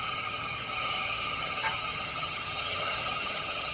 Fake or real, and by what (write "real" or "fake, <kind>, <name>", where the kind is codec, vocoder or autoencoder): fake, vocoder, HiFi-GAN